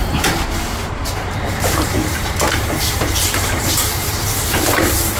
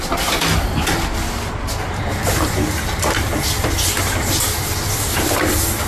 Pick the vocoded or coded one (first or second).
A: first